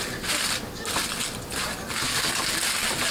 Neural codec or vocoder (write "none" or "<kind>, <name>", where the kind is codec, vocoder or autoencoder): none